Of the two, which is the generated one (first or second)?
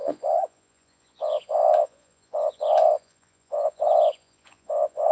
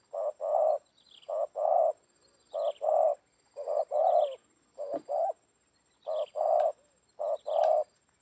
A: first